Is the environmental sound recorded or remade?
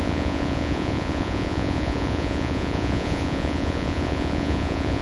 remade